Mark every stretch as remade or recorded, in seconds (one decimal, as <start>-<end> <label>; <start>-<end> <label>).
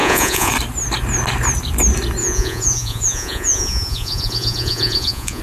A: 0.0-0.5 remade; 0.5-2.2 recorded; 2.2-5.4 remade